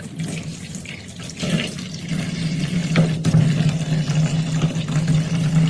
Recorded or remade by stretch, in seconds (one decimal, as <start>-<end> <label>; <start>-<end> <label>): 0.0-5.7 recorded